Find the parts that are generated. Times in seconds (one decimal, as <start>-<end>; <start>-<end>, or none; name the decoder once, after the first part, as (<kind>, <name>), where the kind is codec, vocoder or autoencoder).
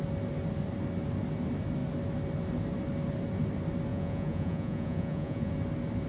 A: 3.9-5.5 (vocoder, Vocos)